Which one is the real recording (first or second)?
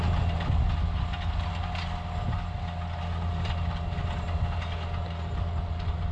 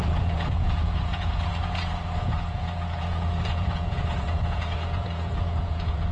first